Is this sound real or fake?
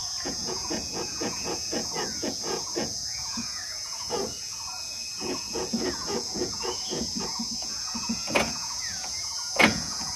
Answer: fake